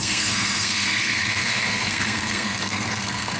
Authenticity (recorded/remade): remade